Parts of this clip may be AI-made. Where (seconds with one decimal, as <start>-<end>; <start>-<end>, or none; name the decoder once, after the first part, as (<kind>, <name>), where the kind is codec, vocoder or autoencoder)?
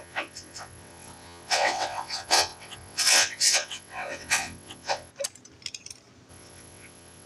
0.0-5.1 (vocoder, WaveNeXt); 6.3-7.3